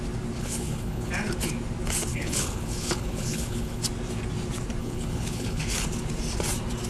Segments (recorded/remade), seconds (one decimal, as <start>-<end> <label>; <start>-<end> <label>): 0.0-0.4 recorded; 0.4-1.1 remade; 1.1-2.1 recorded; 2.1-3.8 remade; 3.8-4.8 recorded; 4.8-5.6 remade; 5.6-6.9 recorded